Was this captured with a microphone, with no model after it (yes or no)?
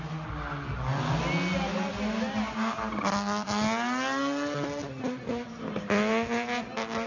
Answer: yes